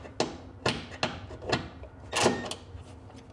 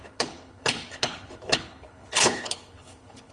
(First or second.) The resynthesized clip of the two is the second